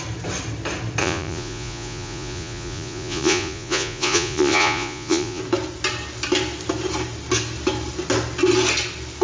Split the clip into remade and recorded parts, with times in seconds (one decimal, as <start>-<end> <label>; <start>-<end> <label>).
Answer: 0.0-1.0 recorded; 1.0-5.4 remade; 5.4-9.2 recorded